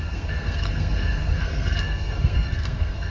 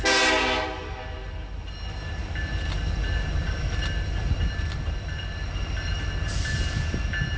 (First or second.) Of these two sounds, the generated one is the first